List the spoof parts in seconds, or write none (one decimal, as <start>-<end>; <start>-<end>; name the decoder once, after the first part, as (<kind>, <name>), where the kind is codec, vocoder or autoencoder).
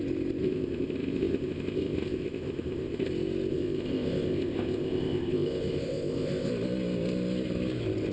0.4-3.1 (codec, ZipCodec); 3.5-6.5